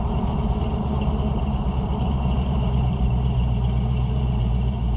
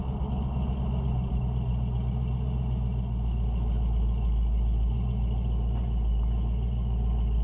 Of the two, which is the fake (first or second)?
first